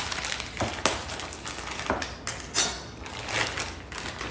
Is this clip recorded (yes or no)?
yes